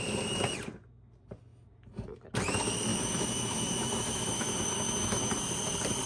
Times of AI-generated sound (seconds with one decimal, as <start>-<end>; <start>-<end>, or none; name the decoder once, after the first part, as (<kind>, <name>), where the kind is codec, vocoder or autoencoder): 2.9-5.4 (autoencoder, DAC-VAE)